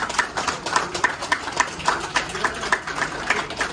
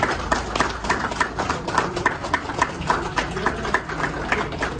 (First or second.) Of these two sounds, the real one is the second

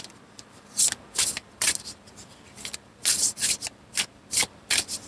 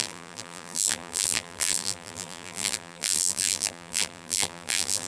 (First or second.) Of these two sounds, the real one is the first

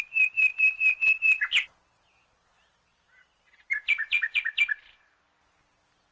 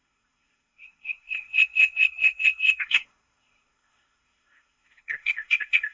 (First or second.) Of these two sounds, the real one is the first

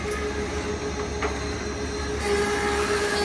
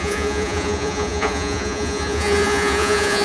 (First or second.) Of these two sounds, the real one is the first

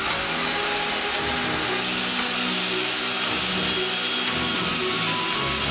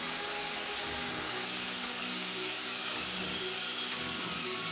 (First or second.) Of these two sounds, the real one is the first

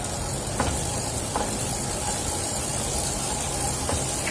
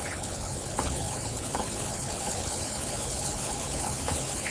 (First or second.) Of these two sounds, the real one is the first